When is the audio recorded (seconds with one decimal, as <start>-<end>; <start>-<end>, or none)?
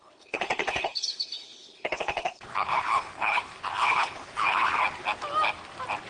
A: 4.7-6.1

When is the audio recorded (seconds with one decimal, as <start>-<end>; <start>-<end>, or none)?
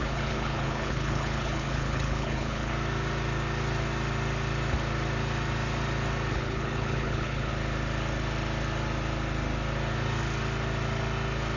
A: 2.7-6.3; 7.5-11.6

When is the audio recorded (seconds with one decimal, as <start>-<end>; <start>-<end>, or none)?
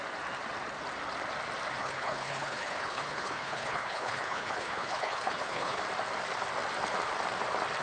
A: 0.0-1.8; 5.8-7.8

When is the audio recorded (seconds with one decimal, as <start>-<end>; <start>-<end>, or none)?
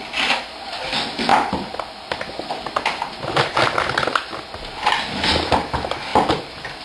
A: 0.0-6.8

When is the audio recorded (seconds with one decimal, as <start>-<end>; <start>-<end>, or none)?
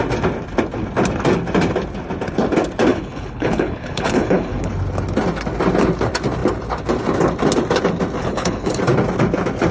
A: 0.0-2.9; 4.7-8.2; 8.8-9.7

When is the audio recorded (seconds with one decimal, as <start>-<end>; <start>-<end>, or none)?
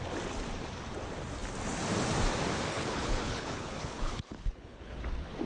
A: 0.0-2.7; 5.0-5.5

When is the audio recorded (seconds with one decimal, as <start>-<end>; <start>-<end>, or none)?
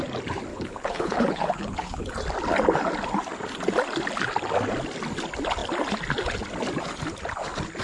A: 0.0-0.5; 2.1-7.8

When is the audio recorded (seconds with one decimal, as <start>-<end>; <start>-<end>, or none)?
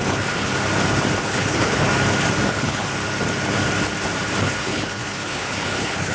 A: 0.5-1.2; 1.9-2.5; 2.9-4.4